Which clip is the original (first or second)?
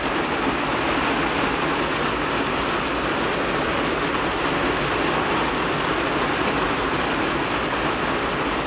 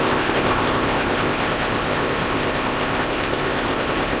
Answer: first